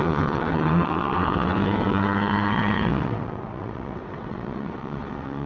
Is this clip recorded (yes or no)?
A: no